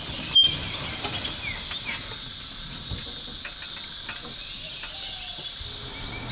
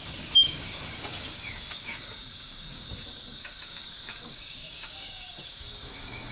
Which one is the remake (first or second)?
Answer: second